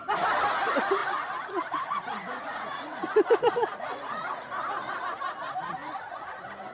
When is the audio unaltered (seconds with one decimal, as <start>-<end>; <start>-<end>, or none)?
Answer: 0.0-1.0; 5.0-5.8; 6.3-6.7